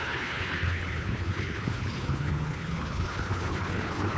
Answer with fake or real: fake